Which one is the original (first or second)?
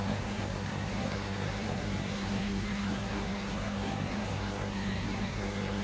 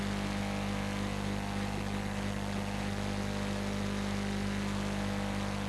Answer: second